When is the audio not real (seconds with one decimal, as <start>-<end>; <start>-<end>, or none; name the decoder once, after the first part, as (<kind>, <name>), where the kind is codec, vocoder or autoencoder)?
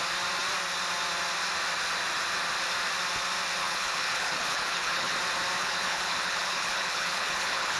3.6-5.1 (codec, HILCodec); 5.6-7.8